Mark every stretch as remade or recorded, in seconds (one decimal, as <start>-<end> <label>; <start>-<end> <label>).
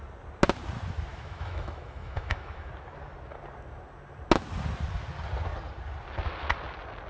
0.0-1.1 recorded; 1.1-2.7 remade; 2.7-7.1 recorded